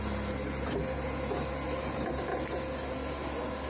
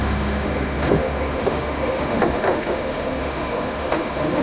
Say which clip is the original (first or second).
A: first